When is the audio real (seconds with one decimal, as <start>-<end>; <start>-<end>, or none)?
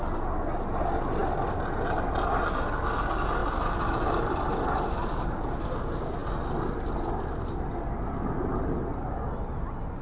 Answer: 0.0-1.2; 1.7-3.4; 5.1-10.0